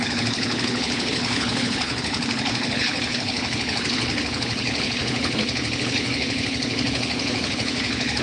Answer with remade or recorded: remade